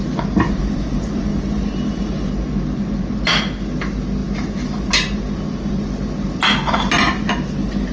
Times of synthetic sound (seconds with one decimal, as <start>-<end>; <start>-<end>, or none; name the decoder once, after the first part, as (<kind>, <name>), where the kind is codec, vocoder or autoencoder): none